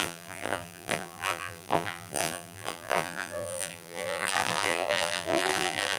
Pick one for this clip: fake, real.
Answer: fake